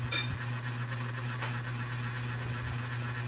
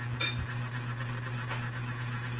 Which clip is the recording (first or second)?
second